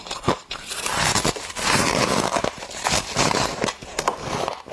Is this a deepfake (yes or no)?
yes